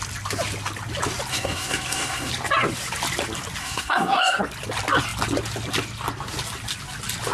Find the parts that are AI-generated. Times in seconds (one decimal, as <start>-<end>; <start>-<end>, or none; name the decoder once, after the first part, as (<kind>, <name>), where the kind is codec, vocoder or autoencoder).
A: 1.3-2.3 (codec, SNAC); 3.6-4.4